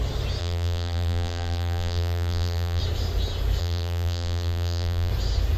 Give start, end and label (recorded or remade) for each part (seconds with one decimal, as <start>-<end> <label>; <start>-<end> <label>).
0.0-0.4 recorded; 0.4-2.8 remade; 2.8-3.6 recorded; 3.6-5.1 remade; 5.1-5.6 recorded